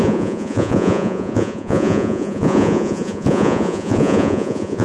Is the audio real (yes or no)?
no